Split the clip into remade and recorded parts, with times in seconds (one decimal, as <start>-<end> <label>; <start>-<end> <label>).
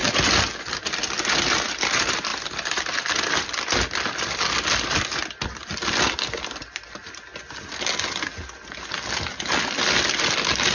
0.0-1.2 remade; 1.2-2.3 recorded; 2.3-7.5 remade; 7.5-10.7 recorded